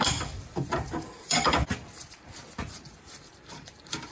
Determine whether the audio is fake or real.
fake